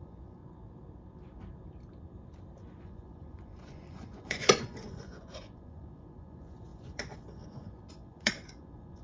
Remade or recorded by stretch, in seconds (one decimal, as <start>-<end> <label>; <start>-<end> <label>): 0.0-0.4 remade; 0.4-2.8 recorded; 2.8-9.0 remade

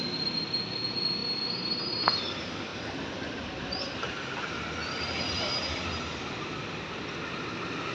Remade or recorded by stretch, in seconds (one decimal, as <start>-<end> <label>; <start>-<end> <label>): 0.0-1.2 recorded; 1.2-2.2 remade; 2.2-2.7 recorded; 2.7-3.9 remade; 3.9-7.9 recorded

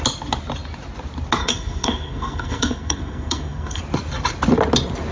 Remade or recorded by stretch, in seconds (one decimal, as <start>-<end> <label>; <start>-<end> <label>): 0.0-1.4 recorded; 1.4-3.8 remade; 3.8-5.1 recorded

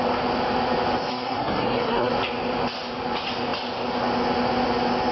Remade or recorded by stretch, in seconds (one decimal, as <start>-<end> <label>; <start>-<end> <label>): 0.0-1.1 recorded; 1.1-2.1 remade; 2.1-5.1 recorded

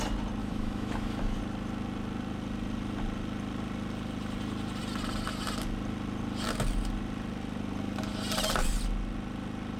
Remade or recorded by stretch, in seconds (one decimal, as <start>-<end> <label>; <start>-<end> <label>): 0.0-0.4 recorded; 0.4-1.4 remade; 1.4-9.8 recorded

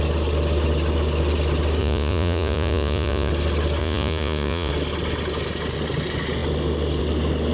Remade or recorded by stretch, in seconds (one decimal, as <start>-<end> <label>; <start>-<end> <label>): 0.0-1.8 recorded; 1.8-3.3 remade; 3.3-3.8 recorded; 3.8-4.7 remade; 4.7-7.5 recorded

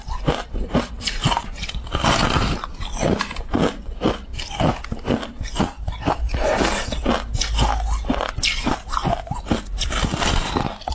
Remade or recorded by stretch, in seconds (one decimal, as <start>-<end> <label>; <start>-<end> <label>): 0.0-10.9 recorded

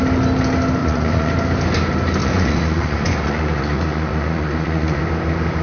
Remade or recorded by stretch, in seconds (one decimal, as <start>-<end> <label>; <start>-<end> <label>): 0.0-0.8 recorded; 0.8-1.3 remade; 1.3-2.2 recorded; 2.2-5.0 remade; 5.0-5.6 recorded